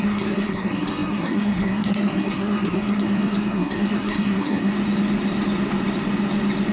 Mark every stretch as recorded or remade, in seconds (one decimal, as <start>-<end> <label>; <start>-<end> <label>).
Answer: 0.0-4.7 remade; 4.7-6.7 recorded